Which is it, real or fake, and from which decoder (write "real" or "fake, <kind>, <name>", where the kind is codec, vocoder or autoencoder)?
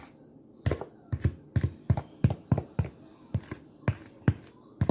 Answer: real